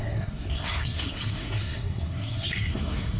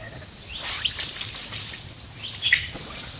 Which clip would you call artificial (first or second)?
first